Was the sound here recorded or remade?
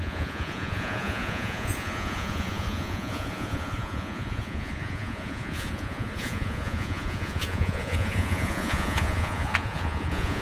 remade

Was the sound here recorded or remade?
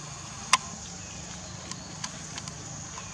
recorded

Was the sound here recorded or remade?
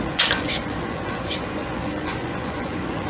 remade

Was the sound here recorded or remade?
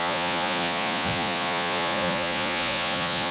remade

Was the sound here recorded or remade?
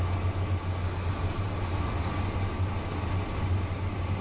recorded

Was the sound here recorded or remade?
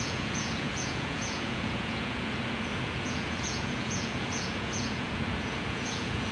remade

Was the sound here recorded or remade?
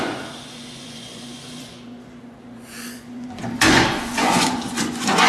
remade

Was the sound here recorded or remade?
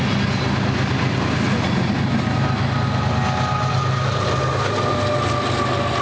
recorded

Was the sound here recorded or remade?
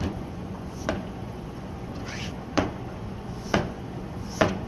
remade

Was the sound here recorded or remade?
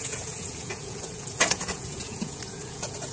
remade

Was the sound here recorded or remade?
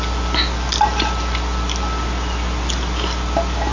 recorded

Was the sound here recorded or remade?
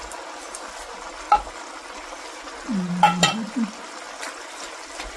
recorded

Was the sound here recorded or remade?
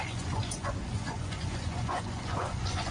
remade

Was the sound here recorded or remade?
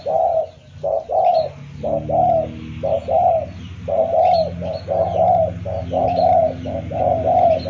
recorded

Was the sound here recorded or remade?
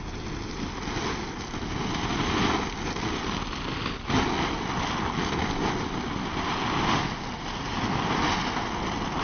recorded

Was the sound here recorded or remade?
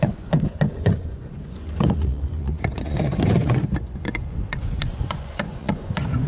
remade